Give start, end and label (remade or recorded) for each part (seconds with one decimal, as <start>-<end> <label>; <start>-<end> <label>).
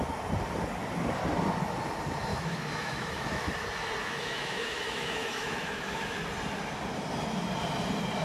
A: 0.0-2.3 recorded; 2.3-3.5 remade; 3.5-4.0 recorded; 4.0-6.2 remade; 6.2-8.2 recorded